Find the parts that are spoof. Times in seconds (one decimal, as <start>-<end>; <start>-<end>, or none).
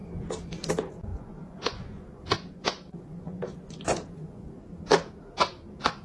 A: 1.1-4.5